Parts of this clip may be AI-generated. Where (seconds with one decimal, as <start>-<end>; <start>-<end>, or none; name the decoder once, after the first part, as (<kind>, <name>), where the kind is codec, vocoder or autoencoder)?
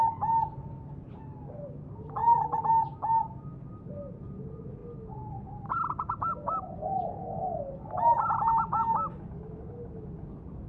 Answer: 2.2-2.7 (vocoder, BigVGAN v2); 4.8-7.2